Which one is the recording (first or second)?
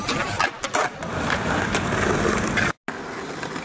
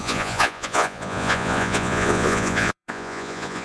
first